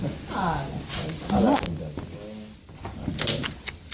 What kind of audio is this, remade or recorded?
recorded